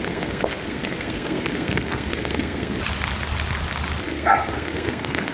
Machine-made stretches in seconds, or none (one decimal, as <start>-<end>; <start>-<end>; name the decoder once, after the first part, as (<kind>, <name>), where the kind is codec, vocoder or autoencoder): 0.0-2.8 (codec, SNAC); 4.0-5.3